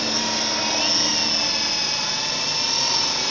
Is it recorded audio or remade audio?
recorded